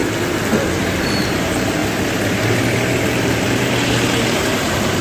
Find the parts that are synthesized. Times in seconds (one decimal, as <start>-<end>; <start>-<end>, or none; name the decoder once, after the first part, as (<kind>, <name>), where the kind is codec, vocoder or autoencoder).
1.2-1.8 (vocoder, BigVGAN v2); 3.3-5.0